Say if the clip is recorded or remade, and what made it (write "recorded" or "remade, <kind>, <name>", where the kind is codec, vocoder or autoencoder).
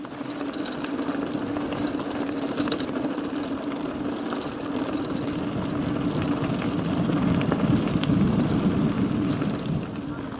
recorded